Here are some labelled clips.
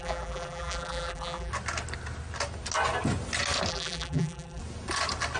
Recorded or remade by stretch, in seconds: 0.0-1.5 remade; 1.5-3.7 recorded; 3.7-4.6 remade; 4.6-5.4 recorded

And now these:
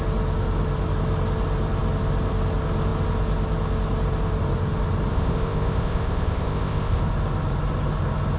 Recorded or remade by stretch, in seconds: 0.0-5.1 recorded; 5.1-7.0 remade; 7.0-8.4 recorded

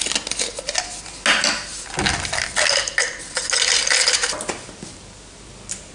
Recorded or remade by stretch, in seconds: 0.0-5.9 recorded

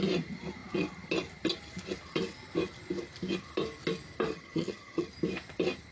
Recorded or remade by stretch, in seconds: 0.0-4.3 recorded; 4.3-5.1 remade; 5.1-5.9 recorded

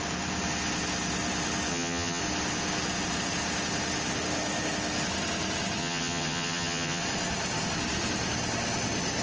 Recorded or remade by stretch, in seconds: 0.0-1.7 recorded; 1.7-2.2 remade; 2.2-5.8 recorded; 5.8-7.0 remade; 7.0-9.2 recorded

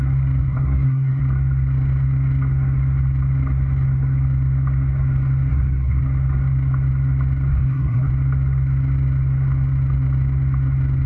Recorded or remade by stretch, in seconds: 0.0-0.4 recorded; 0.4-1.2 remade; 1.2-5.5 recorded; 5.5-6.0 remade; 6.0-7.5 recorded; 7.5-8.1 remade; 8.1-11.1 recorded

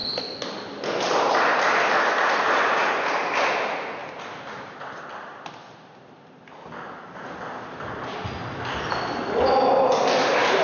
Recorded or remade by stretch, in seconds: 0.0-4.0 recorded; 4.0-5.5 remade; 5.5-10.6 recorded